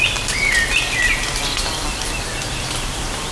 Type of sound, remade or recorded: recorded